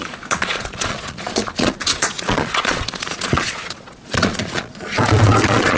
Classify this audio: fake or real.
fake